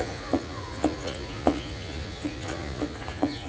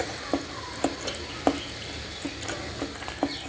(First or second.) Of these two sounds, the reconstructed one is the first